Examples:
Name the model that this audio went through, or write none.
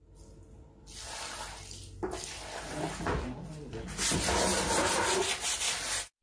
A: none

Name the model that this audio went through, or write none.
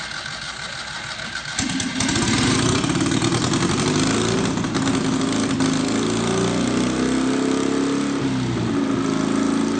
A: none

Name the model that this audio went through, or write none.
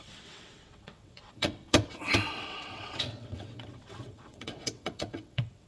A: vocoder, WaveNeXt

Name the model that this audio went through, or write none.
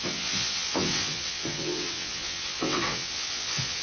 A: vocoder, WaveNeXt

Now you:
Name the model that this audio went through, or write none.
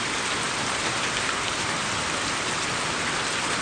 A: none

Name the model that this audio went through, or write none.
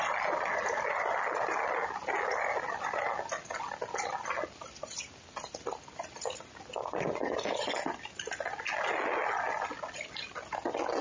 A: none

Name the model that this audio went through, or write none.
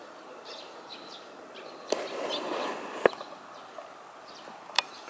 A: none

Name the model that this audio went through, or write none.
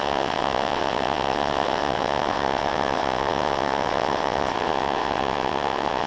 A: vocoder, WaveNeXt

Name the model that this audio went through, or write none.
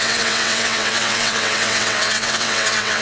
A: vocoder, WaveNeXt